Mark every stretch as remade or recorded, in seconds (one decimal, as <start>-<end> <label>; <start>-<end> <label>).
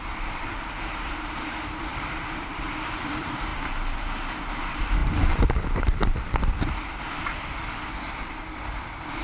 0.0-3.5 remade; 3.5-4.6 recorded; 4.6-9.2 remade